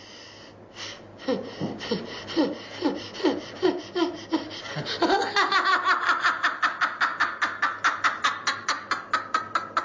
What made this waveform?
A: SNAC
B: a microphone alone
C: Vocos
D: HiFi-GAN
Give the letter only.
B